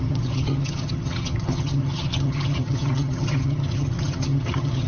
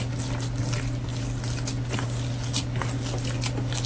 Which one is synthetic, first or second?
first